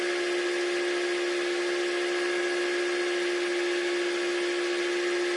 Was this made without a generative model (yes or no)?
yes